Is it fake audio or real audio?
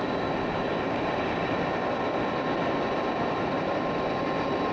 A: real